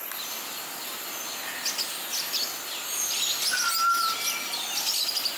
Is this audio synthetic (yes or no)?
no